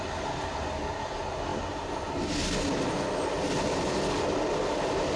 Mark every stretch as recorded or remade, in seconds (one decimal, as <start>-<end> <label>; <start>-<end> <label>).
0.0-5.2 recorded